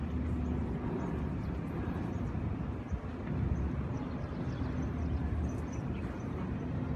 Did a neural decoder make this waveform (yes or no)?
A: no